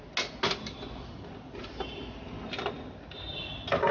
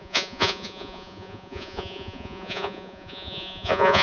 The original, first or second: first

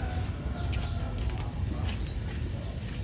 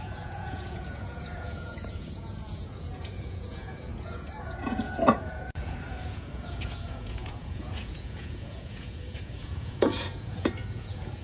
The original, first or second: first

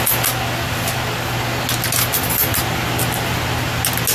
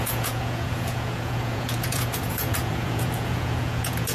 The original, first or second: first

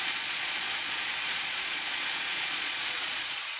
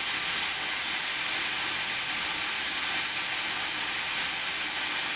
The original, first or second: second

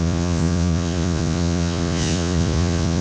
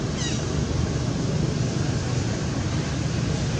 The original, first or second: second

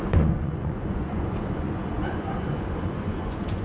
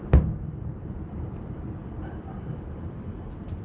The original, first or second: second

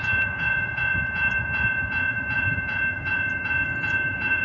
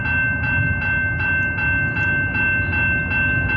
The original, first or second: second